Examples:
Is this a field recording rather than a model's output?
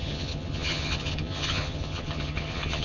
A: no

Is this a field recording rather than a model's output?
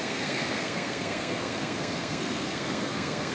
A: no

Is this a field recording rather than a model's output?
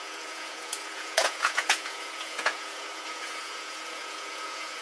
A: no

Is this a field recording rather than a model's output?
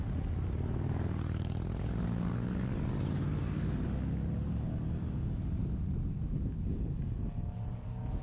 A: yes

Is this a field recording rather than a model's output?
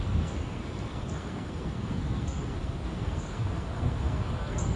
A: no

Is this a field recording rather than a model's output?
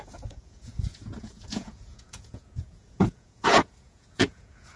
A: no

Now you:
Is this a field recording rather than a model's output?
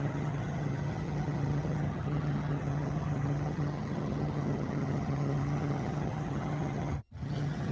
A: no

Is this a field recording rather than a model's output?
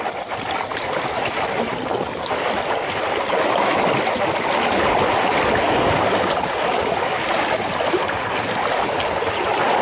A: yes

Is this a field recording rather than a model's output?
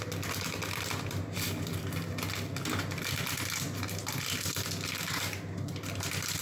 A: yes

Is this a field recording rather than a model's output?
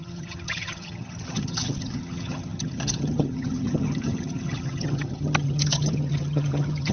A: no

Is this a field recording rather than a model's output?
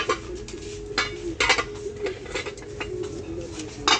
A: yes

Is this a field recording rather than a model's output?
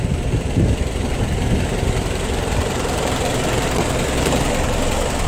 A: no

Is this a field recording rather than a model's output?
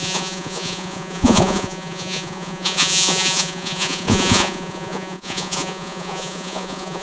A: no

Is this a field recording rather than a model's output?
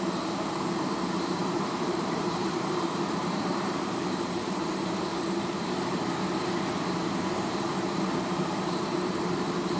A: no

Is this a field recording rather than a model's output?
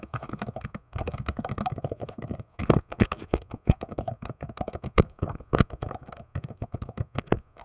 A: no